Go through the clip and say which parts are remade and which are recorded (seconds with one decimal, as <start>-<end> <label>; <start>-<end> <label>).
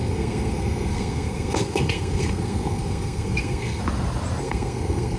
0.0-3.8 remade; 3.8-4.4 recorded; 4.4-5.2 remade